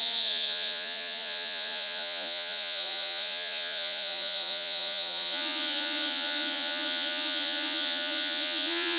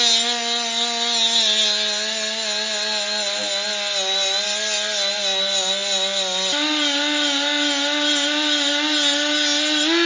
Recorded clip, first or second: second